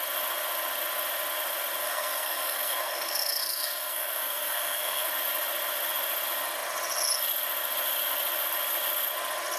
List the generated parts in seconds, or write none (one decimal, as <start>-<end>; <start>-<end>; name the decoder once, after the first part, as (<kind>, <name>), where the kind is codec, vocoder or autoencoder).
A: 1.8-5.1 (codec, SNAC)